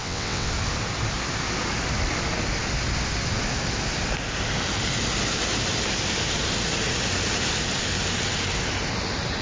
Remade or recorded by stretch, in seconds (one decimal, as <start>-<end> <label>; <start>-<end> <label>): 0.0-0.5 remade; 0.5-9.4 recorded

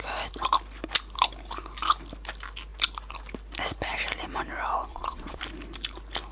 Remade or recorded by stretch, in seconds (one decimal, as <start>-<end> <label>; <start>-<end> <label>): 0.0-4.9 recorded; 4.9-5.4 remade; 5.4-6.3 recorded